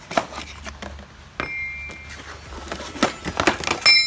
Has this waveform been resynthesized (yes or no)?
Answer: no